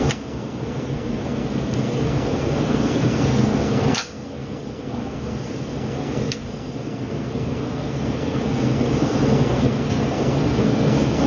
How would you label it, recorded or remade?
remade